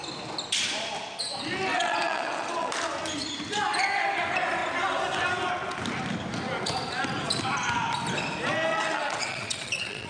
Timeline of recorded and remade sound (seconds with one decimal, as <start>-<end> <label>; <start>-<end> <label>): 0.0-1.7 recorded; 1.7-2.7 remade; 2.7-8.7 recorded; 8.7-10.1 remade

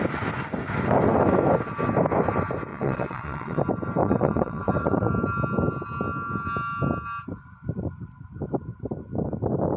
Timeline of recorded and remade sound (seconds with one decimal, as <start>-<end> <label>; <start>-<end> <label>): 0.0-2.7 recorded; 2.7-3.6 remade; 3.6-4.0 recorded; 4.0-5.1 remade; 5.1-9.8 recorded